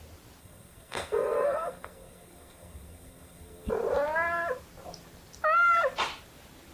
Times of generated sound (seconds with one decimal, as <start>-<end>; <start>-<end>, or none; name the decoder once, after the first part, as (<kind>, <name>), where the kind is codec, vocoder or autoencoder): 0.4-3.7 (codec, SNAC)